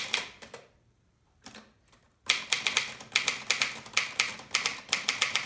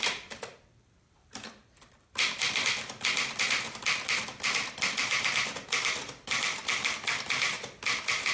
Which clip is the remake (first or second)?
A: second